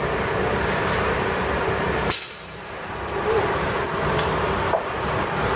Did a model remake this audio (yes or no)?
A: yes